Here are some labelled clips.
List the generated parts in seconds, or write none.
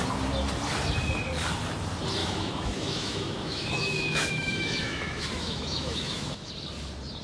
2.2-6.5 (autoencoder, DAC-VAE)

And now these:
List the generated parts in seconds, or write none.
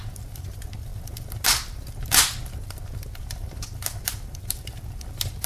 none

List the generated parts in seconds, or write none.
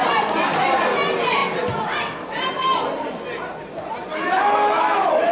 4.1-5.3 (autoencoder, DAC-VAE)